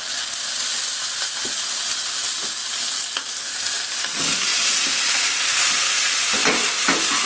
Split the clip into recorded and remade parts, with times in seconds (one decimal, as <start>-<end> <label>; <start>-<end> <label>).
0.0-4.5 recorded; 4.5-5.4 remade; 5.4-7.3 recorded